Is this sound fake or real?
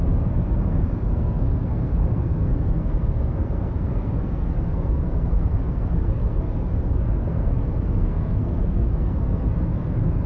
fake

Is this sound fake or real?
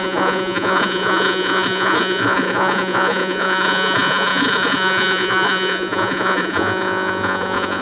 fake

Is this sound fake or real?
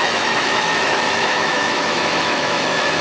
fake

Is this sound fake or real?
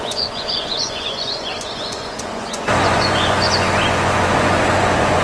fake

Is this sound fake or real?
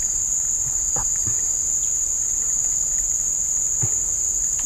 real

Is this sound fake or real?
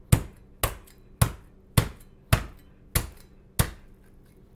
real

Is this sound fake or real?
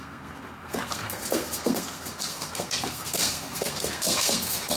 fake